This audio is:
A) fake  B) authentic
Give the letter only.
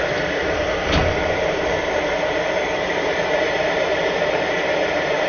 A